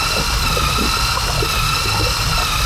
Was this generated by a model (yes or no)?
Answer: no